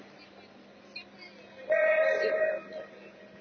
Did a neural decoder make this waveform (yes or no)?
no